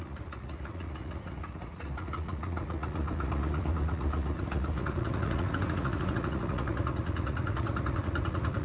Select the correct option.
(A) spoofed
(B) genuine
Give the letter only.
A